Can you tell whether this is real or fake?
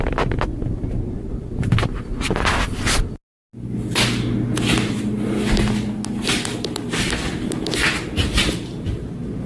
real